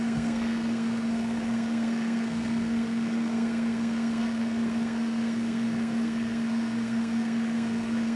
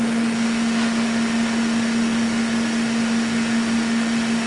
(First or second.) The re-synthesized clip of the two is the first